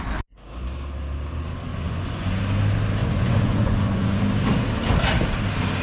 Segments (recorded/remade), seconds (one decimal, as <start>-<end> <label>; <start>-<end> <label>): 0.0-1.7 recorded; 1.7-2.4 remade; 2.4-3.0 recorded; 3.0-4.2 remade; 4.2-5.8 recorded